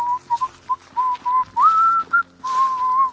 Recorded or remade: recorded